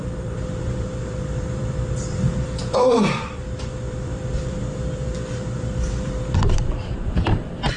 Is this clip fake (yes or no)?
yes